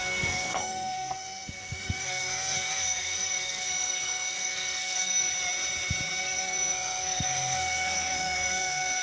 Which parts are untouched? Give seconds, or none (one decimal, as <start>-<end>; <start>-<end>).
5.3-6.2

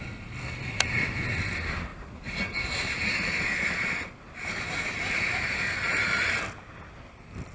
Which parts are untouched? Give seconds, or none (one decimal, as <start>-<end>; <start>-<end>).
0.0-1.9; 6.4-7.5

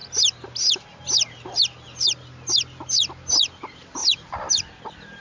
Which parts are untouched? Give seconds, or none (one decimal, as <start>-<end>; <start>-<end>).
0.0-4.0; 4.5-5.2

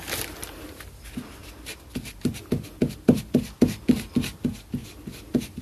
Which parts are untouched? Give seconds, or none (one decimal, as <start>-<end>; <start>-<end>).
0.0-5.6

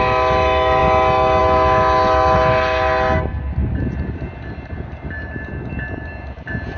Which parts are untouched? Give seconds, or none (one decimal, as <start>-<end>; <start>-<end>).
0.0-6.8

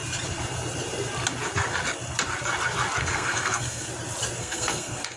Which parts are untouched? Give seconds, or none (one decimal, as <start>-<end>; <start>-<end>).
0.0-3.0; 3.9-4.4